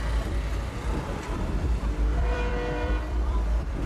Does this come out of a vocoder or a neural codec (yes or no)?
yes